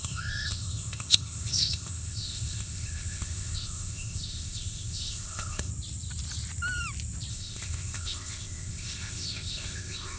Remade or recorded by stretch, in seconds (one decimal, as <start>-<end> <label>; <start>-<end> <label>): 0.0-5.7 remade; 5.7-7.3 recorded; 7.3-10.2 remade